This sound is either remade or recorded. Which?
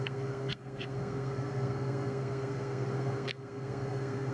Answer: remade